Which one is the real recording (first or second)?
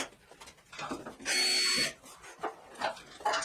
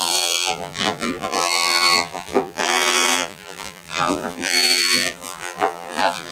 first